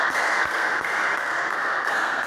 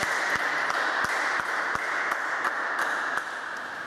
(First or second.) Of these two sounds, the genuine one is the second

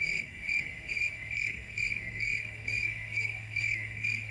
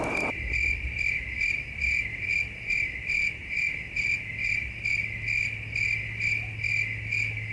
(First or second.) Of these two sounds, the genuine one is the second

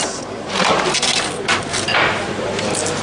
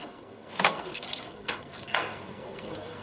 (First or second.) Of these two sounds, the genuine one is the first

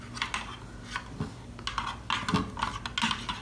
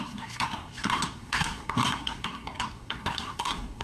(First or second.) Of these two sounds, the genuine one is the first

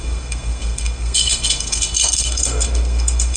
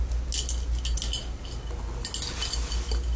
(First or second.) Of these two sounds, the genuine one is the second